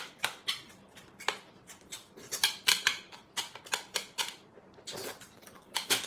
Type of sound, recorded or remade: remade